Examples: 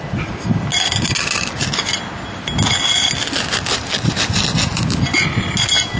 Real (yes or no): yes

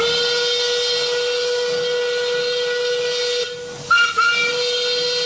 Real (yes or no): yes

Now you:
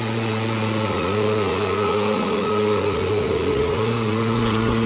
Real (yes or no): no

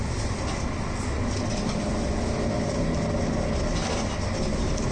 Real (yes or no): yes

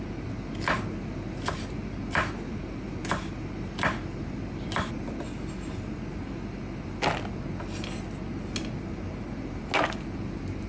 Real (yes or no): yes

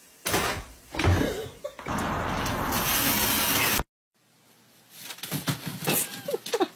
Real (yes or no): yes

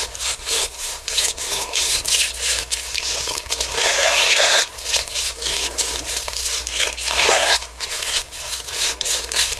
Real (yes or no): no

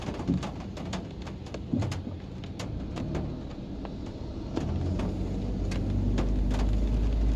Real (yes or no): yes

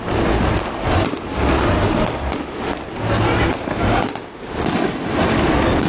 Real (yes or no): yes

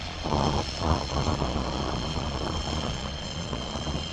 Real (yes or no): no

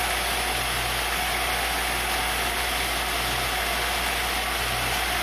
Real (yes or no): yes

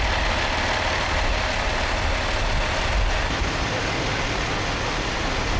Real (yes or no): yes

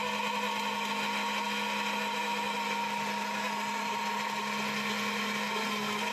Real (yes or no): yes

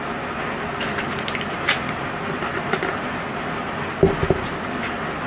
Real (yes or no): yes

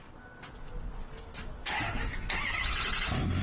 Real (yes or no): yes